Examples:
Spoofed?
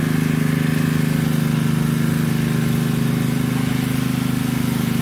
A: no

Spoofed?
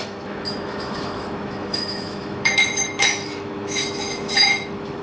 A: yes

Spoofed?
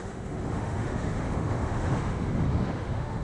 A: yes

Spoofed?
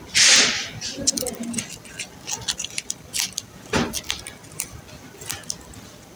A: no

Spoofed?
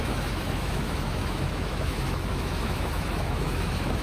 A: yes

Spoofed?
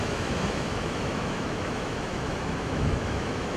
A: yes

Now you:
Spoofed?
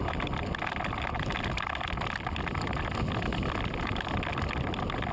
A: no